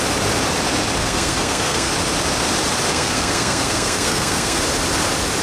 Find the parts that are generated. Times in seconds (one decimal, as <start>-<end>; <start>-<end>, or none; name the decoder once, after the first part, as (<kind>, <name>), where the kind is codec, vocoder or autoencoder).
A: 1.0-1.9 (codec, SNAC); 2.9-4.6